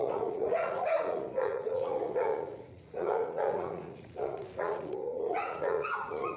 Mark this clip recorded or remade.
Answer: remade